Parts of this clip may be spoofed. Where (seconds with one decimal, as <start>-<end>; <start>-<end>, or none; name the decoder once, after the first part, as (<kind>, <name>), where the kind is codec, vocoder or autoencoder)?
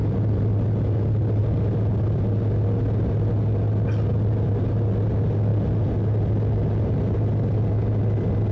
none